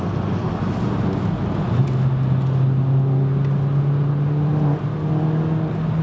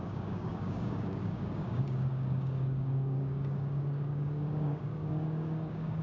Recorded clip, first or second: first